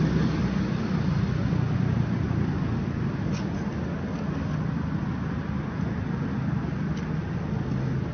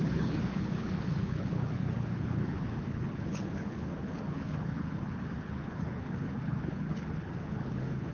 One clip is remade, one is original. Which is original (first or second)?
first